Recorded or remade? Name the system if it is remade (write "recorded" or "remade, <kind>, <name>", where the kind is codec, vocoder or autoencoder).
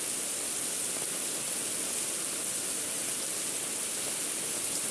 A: recorded